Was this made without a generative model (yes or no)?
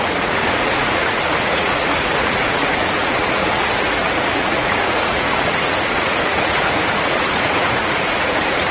no